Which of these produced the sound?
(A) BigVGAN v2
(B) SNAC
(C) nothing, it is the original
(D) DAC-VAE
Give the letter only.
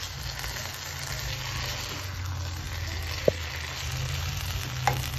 C